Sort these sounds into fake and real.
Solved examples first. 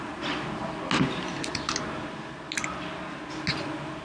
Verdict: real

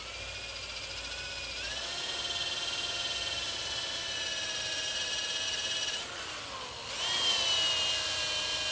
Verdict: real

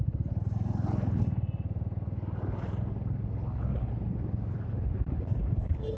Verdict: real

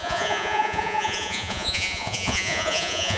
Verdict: fake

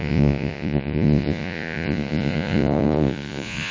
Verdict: fake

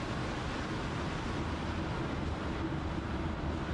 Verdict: real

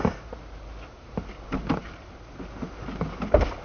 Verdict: real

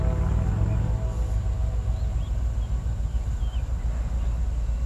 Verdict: real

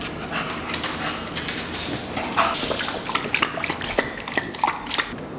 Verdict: real